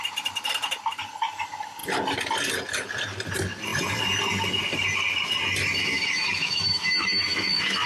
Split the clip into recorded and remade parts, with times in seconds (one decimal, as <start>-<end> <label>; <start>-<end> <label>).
0.0-5.8 recorded; 5.8-7.9 remade